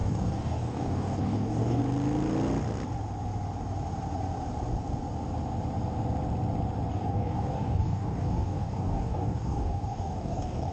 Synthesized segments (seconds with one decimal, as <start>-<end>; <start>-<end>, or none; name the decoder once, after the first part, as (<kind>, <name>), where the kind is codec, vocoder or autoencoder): 0.0-1.8 (codec, DAC); 6.9-10.7